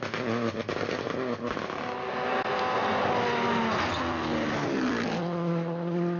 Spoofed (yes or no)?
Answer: no